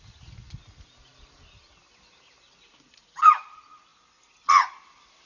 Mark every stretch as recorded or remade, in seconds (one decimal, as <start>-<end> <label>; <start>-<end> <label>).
0.0-5.3 recorded